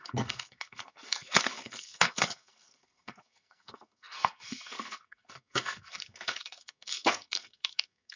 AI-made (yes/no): yes